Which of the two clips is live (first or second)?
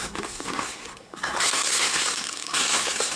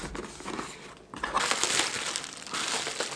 second